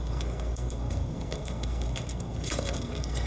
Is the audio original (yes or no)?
no